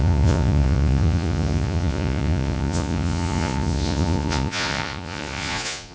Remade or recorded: remade